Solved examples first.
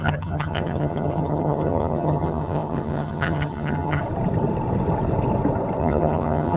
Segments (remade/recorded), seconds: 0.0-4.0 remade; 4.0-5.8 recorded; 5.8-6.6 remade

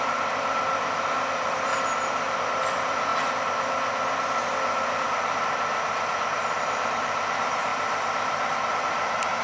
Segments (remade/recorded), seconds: 0.0-1.7 remade; 1.7-2.6 recorded; 2.6-3.1 remade; 3.1-4.5 recorded; 4.5-7.7 remade; 7.7-8.7 recorded; 8.7-9.4 remade

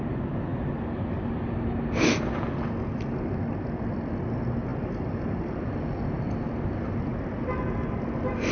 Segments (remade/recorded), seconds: 0.0-4.7 recorded; 4.7-6.0 remade; 6.0-8.5 recorded

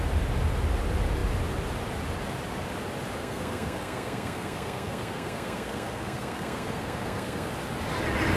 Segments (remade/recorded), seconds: 0.0-3.2 recorded; 3.2-7.5 remade; 7.5-8.4 recorded

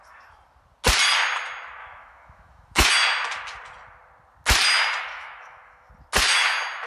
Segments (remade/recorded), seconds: 0.0-1.8 recorded; 1.8-2.9 remade; 2.9-5.1 recorded; 5.1-5.9 remade; 5.9-6.9 recorded